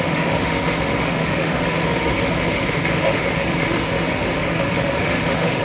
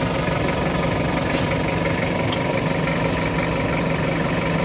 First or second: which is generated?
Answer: first